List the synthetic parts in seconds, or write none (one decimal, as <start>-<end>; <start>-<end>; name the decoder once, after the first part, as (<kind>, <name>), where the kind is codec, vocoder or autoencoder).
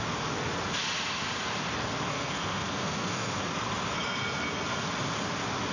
2.1-3.3 (codec, SNAC)